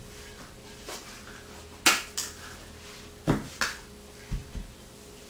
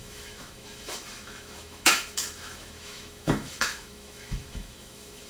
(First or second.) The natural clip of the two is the first